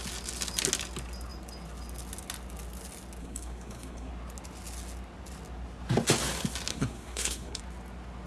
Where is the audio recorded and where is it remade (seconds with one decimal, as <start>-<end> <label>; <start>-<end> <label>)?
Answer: 0.0-3.2 recorded; 3.2-4.1 remade; 4.1-6.7 recorded; 6.7-7.6 remade; 7.6-8.3 recorded